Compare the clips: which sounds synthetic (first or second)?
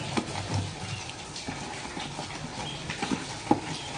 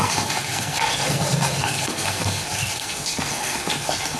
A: second